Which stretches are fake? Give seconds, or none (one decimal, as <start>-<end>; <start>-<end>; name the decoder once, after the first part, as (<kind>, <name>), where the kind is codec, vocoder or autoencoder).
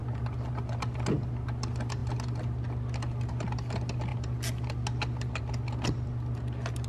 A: none